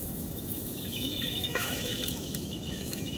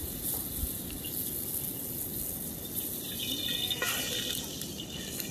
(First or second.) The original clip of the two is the second